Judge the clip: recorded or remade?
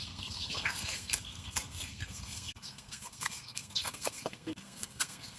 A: remade